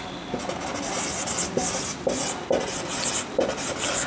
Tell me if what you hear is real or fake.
real